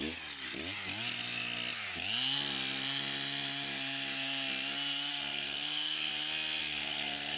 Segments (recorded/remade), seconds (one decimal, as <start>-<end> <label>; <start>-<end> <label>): 0.0-5.1 recorded; 5.1-6.1 remade; 6.1-6.6 recorded; 6.6-7.4 remade